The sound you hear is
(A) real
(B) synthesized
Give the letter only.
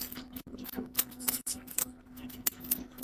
B